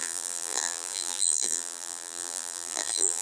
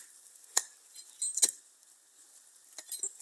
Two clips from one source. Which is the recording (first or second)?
second